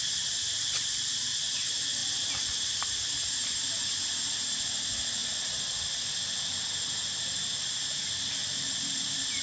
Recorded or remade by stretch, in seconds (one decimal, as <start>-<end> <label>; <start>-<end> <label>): 0.0-8.4 recorded; 8.4-9.4 remade